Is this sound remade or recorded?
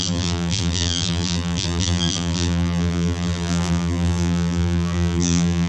remade